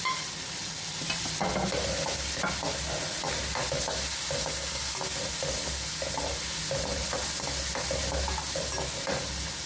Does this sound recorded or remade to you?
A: recorded